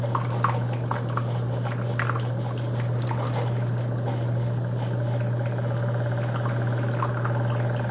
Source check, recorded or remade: recorded